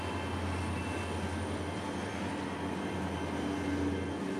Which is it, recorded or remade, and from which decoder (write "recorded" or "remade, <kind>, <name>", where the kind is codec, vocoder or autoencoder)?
recorded